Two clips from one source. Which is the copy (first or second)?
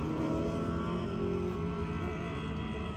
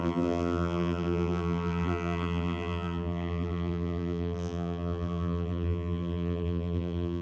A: second